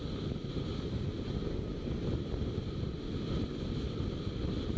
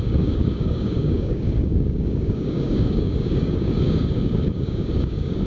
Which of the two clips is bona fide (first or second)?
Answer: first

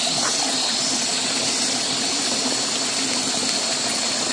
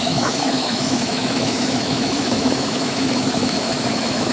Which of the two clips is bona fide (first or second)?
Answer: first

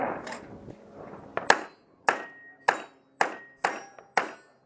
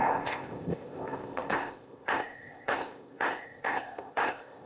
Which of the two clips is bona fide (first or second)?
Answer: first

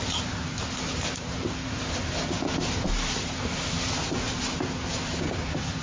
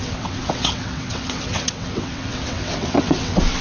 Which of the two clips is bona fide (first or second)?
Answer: first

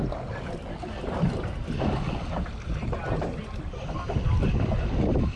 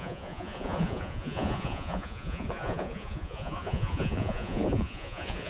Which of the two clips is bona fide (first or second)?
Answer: first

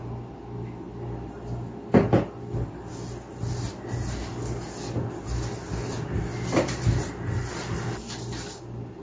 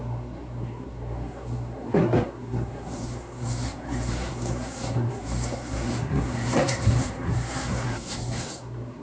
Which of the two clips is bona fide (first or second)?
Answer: first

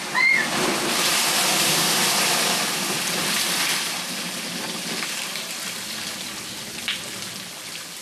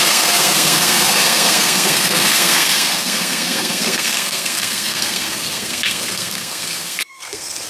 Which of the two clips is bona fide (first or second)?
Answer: first